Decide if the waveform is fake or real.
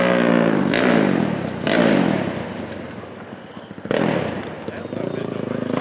real